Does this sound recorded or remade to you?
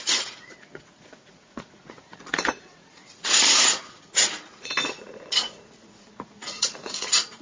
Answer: remade